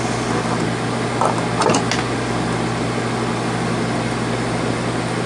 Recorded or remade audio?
recorded